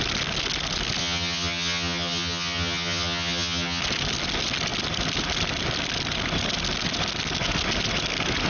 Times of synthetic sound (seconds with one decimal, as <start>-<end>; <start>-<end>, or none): 1.0-3.8